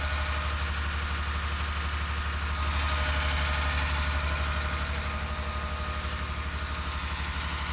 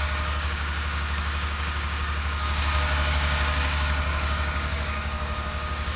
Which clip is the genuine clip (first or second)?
first